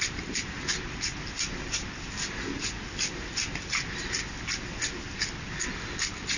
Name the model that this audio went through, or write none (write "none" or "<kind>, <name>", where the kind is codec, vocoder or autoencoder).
none